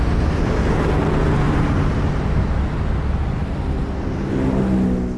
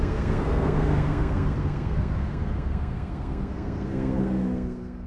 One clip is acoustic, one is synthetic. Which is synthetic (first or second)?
second